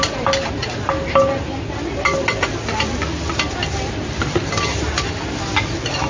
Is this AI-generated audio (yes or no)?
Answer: no